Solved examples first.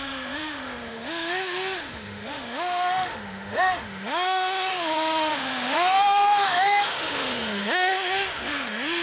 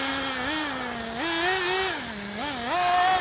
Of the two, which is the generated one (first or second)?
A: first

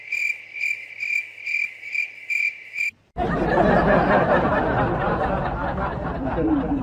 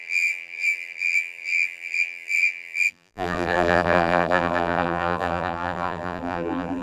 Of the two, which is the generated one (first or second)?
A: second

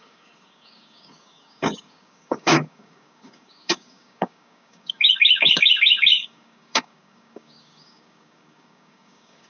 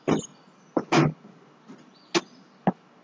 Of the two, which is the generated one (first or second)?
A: first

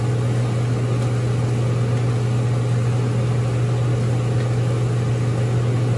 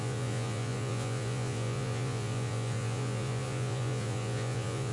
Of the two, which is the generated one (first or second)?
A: second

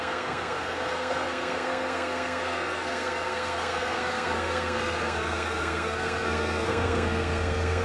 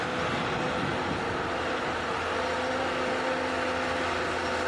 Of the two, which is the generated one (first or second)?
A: first